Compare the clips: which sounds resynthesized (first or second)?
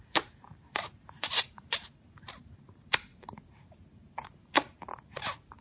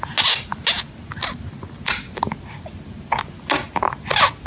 first